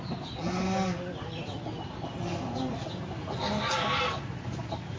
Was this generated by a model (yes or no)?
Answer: no